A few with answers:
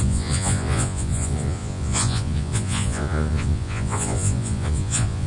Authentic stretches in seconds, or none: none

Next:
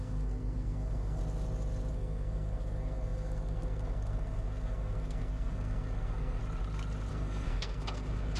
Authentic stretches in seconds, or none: 1.2-1.9; 6.4-7.1

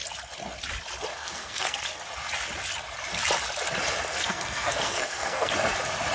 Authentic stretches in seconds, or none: 0.0-1.1; 1.8-4.1; 5.5-6.1

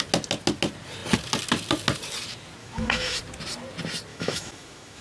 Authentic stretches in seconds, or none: 0.0-2.6; 3.2-4.1